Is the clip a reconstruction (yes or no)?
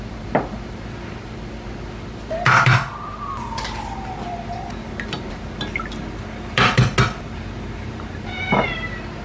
no